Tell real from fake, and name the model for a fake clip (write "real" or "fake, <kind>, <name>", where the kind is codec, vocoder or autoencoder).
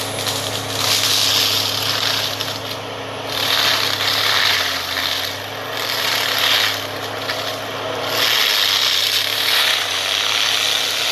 real